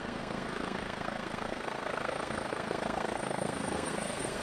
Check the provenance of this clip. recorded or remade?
remade